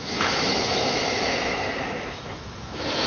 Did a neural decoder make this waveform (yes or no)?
yes